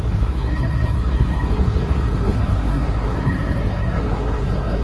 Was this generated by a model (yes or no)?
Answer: yes